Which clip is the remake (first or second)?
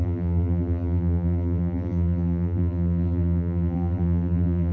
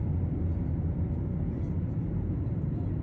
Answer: first